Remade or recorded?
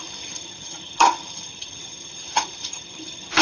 remade